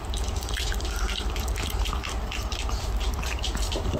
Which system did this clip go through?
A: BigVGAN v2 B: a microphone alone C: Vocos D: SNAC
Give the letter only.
A